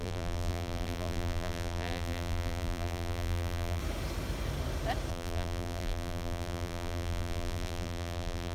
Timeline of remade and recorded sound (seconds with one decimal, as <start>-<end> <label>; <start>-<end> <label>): 0.0-3.8 remade; 3.8-5.1 recorded; 5.1-8.5 remade